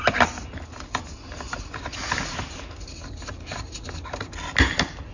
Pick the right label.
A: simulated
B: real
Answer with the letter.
B